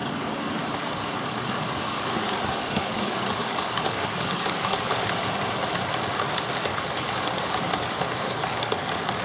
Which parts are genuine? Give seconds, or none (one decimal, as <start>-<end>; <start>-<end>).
5.1-6.7